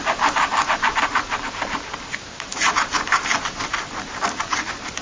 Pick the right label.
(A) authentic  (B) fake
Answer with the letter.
B